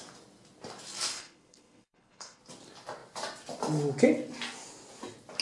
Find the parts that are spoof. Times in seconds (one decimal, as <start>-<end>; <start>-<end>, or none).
1.1-2.4